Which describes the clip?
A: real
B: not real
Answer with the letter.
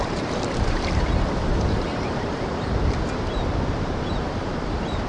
B